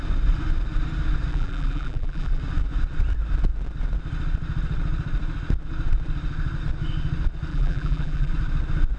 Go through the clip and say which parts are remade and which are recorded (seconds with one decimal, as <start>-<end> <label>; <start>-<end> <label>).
0.0-1.3 recorded; 1.3-2.4 remade; 2.4-7.5 recorded; 7.5-8.3 remade; 8.3-9.0 recorded